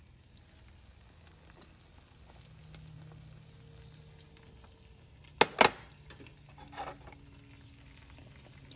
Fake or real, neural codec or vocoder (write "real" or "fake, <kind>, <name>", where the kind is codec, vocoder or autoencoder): real